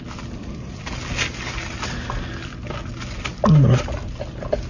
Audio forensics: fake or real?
real